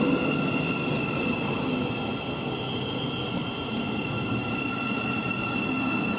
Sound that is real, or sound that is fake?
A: real